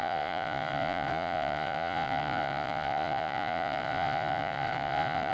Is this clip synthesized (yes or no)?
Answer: yes